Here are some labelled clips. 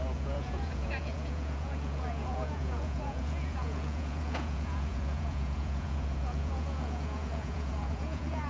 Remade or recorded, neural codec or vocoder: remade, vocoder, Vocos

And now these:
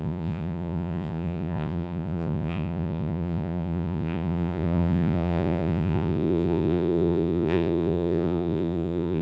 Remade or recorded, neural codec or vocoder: remade, vocoder, Vocos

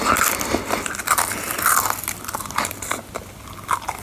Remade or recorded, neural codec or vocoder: recorded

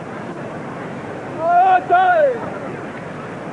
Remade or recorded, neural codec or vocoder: recorded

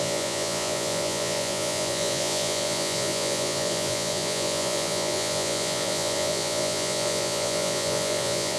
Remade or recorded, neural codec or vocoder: remade, vocoder, Vocos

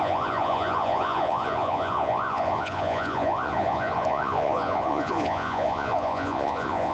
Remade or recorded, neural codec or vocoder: remade, vocoder, Vocos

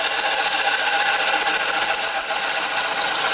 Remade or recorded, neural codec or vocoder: recorded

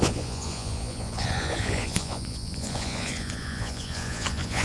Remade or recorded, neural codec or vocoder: remade, vocoder, Vocos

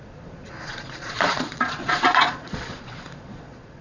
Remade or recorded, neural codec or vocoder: remade, vocoder, Vocos